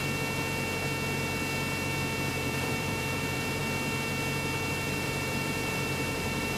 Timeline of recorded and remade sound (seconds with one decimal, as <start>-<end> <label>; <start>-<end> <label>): 0.0-2.3 recorded; 2.3-3.6 remade; 3.6-4.7 recorded; 4.7-6.6 remade